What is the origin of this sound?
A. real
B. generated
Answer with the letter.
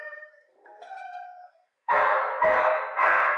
B